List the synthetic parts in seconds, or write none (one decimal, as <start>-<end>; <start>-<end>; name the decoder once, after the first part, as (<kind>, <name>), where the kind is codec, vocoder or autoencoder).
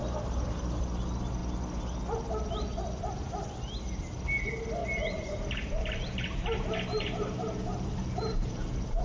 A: 0.0-0.8 (vocoder, BigVGAN v2); 4.8-9.0